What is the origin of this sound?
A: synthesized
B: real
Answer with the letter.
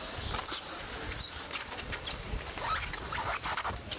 B